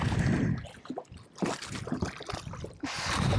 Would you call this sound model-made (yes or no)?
no